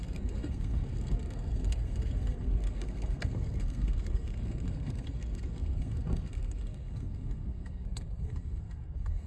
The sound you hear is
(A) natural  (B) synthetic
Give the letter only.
B